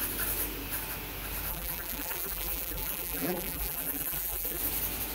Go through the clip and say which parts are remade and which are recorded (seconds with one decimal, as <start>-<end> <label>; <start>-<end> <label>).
0.0-1.5 recorded; 1.5-4.6 remade; 4.6-5.1 recorded